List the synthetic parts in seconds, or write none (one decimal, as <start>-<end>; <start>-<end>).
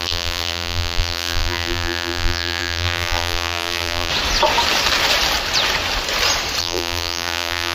0.0-4.1; 6.6-7.7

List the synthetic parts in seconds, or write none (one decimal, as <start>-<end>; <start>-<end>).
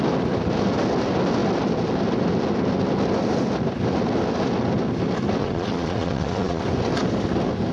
5.4-6.6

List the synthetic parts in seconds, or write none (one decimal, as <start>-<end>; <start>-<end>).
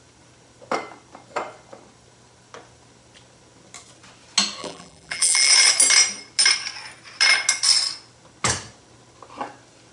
4.6-5.5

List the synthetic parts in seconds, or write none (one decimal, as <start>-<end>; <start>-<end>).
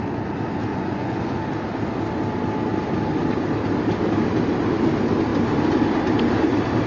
0.7-1.4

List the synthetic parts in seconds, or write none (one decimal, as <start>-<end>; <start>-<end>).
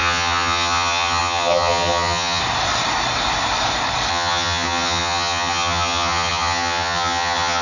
0.0-2.4; 4.1-7.6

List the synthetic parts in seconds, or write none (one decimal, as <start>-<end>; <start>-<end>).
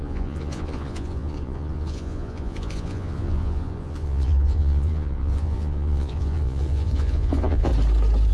0.0-7.7